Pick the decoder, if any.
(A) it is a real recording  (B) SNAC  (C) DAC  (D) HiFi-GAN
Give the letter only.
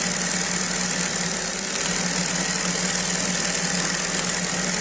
A